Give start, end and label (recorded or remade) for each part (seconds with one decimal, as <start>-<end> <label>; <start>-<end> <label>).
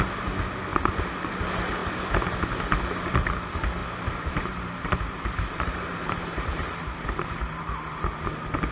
0.0-3.8 recorded; 3.8-7.6 remade; 7.6-8.7 recorded